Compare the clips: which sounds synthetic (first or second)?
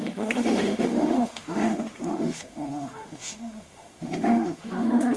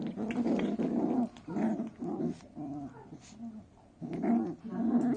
first